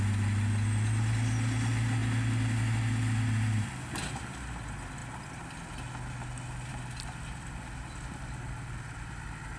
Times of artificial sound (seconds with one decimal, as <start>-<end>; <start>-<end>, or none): none